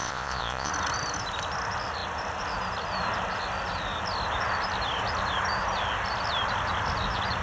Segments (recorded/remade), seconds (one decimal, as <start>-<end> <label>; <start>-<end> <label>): 0.0-0.7 remade; 0.7-7.4 recorded